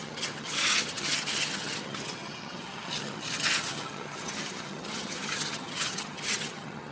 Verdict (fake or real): fake